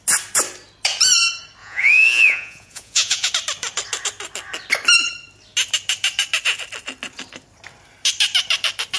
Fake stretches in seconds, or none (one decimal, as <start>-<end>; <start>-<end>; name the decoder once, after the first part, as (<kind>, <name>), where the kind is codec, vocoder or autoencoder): 1.6-3.3 (vocoder, Vocos)